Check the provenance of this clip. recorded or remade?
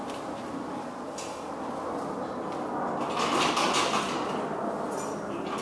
recorded